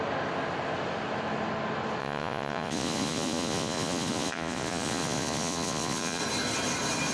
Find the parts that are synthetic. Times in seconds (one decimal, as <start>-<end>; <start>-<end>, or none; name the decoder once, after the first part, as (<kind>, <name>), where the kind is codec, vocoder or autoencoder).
2.0-6.2 (vocoder, Vocos)